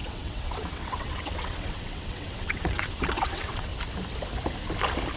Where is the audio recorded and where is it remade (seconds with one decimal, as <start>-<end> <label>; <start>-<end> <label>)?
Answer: 0.0-3.7 remade; 3.7-5.2 recorded